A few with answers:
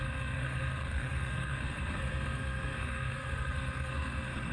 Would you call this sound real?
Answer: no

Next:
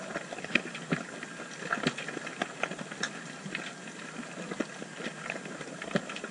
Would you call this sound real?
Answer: yes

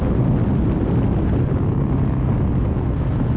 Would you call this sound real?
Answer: yes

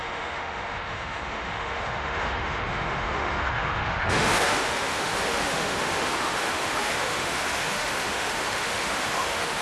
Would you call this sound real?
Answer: no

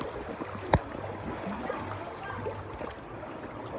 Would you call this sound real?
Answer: yes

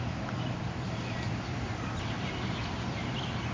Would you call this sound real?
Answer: no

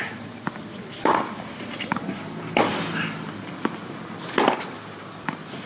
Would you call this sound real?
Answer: no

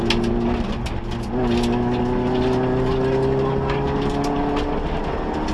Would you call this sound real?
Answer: yes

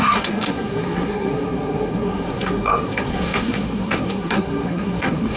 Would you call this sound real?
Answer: no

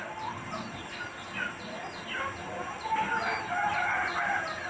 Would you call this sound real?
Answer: yes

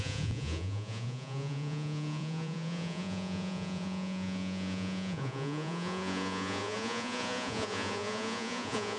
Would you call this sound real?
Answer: no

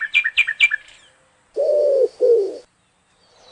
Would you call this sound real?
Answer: yes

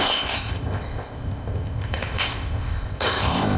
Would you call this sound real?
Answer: no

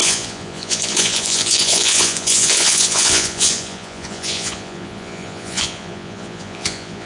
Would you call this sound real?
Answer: no